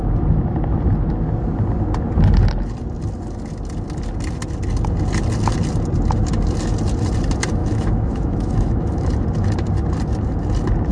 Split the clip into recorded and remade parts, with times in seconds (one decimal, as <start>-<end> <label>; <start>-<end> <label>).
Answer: 0.0-7.6 recorded; 7.6-9.1 remade; 9.1-10.9 recorded

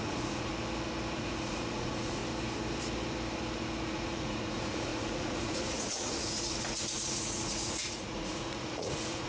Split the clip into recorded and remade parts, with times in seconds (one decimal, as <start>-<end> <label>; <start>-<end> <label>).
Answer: 0.0-0.5 remade; 0.5-1.2 recorded; 1.2-2.2 remade; 2.2-3.9 recorded; 3.9-9.3 remade

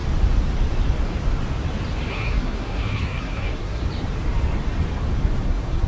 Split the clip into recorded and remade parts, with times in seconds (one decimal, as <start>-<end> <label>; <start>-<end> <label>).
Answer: 0.0-2.1 recorded; 2.1-3.8 remade; 3.8-5.4 recorded; 5.4-5.9 remade

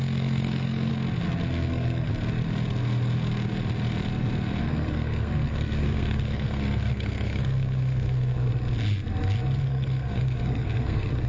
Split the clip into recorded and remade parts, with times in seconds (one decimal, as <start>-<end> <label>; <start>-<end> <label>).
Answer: 0.0-0.9 remade; 0.9-1.7 recorded; 1.7-2.1 remade; 2.1-4.6 recorded; 4.6-8.5 remade; 8.5-9.6 recorded; 9.6-11.3 remade

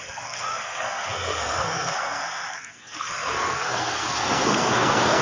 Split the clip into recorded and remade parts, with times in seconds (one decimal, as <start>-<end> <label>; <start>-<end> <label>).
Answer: 0.0-5.2 remade

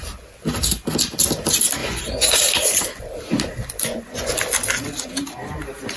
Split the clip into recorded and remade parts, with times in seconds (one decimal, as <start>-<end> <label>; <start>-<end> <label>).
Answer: 0.0-1.8 recorded; 1.8-2.4 remade; 2.4-3.6 recorded; 3.6-4.3 remade; 4.3-6.0 recorded

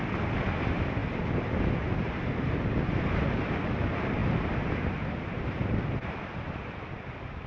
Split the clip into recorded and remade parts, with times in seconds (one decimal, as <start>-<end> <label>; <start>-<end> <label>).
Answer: 0.0-7.5 recorded

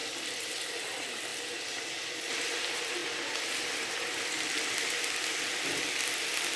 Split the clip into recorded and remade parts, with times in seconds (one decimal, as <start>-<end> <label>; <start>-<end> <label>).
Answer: 0.0-1.3 remade; 1.3-2.3 recorded; 2.3-6.6 remade